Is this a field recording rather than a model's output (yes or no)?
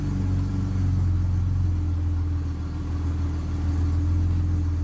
yes